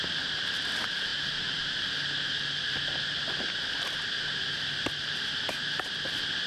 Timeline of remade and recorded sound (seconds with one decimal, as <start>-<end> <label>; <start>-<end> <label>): 0.0-6.5 recorded